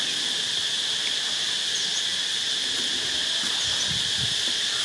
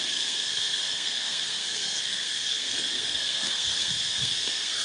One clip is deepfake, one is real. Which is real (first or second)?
first